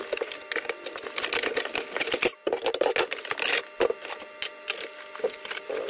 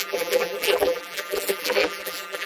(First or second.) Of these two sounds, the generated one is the second